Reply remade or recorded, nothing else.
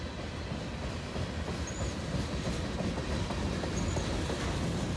recorded